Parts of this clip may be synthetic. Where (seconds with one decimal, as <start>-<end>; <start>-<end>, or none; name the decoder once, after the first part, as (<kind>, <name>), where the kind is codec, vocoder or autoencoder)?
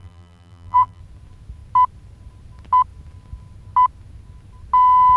0.0-1.0 (vocoder, BigVGAN v2)